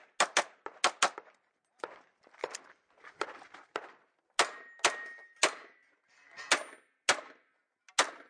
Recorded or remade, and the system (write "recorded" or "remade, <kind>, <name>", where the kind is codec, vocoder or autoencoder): recorded